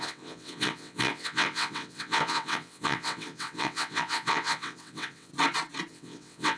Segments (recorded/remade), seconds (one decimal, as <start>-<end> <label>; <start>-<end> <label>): 0.0-5.3 remade; 5.3-5.9 recorded; 5.9-6.6 remade